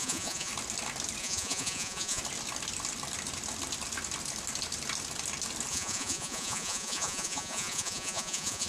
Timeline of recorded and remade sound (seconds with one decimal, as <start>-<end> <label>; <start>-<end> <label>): 0.0-0.5 remade; 0.5-1.2 recorded; 1.2-2.2 remade; 2.2-5.7 recorded; 5.7-8.7 remade